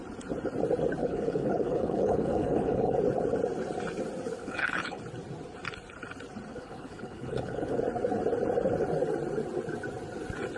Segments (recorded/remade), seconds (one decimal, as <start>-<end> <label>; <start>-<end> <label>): 0.0-1.0 recorded; 1.0-3.0 remade; 3.0-4.4 recorded; 4.4-5.0 remade; 5.0-6.5 recorded; 6.5-7.8 remade; 7.8-10.6 recorded